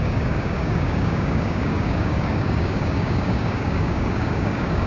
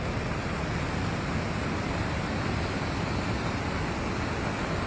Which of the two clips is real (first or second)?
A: second